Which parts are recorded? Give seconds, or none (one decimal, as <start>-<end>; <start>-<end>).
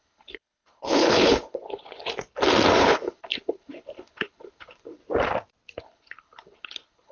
2.0-2.8; 5.0-5.8